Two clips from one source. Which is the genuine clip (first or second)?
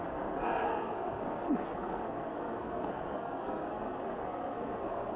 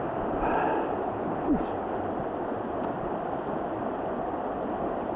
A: second